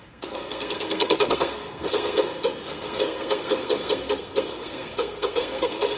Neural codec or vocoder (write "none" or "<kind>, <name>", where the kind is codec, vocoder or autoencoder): codec, SNAC